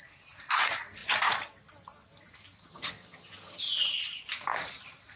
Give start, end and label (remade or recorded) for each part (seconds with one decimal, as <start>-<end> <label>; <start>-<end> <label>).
0.0-2.7 recorded; 2.7-3.6 remade; 3.6-5.2 recorded